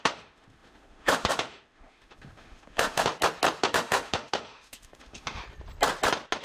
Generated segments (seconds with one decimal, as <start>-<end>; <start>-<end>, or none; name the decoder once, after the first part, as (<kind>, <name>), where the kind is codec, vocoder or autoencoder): 0.0-3.1 (autoencoder, DAC-VAE); 3.6-5.4